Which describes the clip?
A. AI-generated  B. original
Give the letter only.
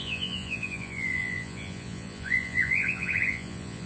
A